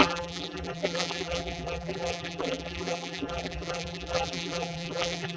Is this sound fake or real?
fake